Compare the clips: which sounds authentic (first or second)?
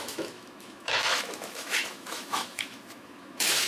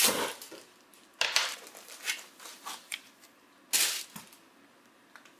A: second